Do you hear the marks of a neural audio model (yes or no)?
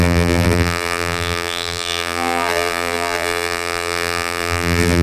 yes